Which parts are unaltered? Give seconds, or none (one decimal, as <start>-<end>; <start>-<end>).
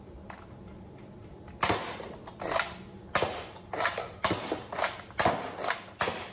2.2-6.3